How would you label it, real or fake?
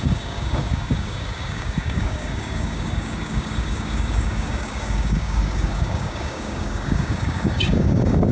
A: fake